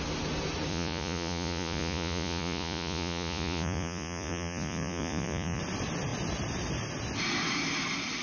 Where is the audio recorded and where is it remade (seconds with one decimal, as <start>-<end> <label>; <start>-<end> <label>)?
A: 0.0-0.7 recorded; 0.7-5.6 remade; 5.6-8.2 recorded